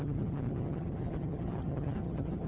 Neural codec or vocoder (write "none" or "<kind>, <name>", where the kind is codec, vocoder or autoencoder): vocoder, HiFi-GAN